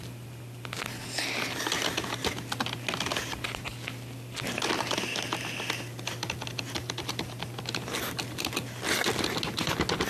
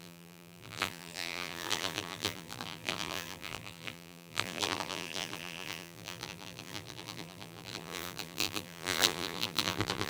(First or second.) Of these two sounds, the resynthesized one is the second